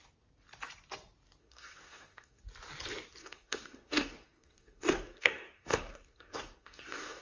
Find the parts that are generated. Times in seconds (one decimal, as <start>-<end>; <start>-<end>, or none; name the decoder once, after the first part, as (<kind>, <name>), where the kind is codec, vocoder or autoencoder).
1.4-2.4 (codec, SNAC); 3.2-7.2